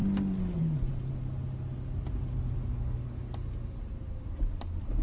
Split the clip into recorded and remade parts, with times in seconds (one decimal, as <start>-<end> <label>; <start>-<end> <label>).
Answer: 0.0-5.0 recorded